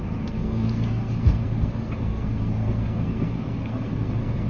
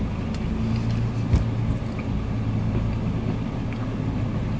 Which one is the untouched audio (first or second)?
second